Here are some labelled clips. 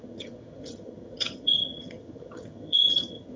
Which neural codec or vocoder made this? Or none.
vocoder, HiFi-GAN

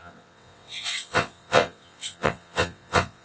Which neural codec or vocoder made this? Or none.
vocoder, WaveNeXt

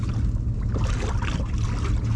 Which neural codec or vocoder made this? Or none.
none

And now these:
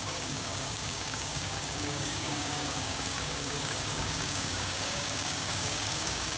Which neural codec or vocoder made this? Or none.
codec, DAC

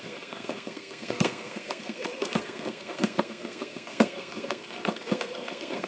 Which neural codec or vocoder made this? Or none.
codec, SNAC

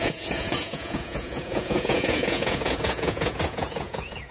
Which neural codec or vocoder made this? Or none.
vocoder, Vocos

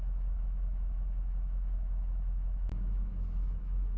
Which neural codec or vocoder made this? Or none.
autoencoder, DAC-VAE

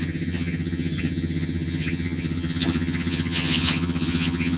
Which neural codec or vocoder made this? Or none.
vocoder, HiFi-GAN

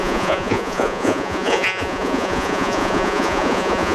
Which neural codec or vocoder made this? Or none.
vocoder, Vocos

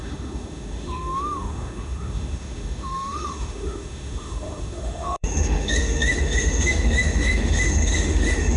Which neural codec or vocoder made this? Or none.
autoencoder, DAC-VAE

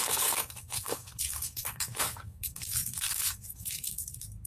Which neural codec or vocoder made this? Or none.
codec, SNAC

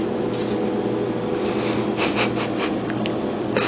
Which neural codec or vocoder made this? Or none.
none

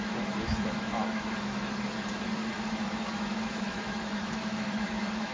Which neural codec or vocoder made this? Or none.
autoencoder, DAC-VAE